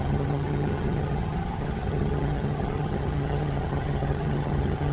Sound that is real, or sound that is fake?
fake